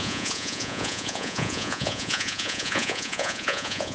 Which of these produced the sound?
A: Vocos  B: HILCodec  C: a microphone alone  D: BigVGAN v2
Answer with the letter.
A